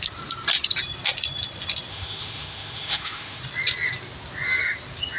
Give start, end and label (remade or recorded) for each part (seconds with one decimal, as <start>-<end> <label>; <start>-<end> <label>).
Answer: 0.0-1.9 recorded; 1.9-3.4 remade; 3.4-5.2 recorded